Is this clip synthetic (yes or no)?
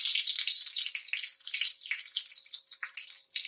no